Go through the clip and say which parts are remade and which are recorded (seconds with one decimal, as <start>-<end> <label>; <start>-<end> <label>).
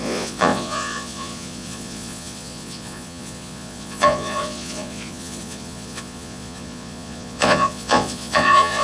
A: 0.0-8.8 remade